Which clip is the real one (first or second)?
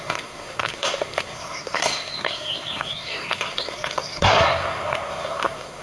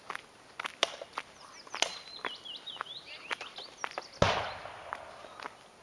second